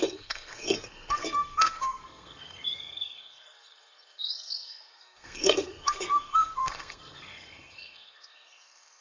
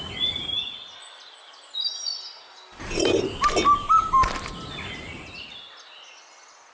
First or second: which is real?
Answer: second